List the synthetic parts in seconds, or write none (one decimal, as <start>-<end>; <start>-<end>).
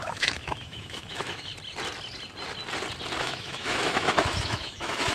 0.0-1.5; 3.2-5.1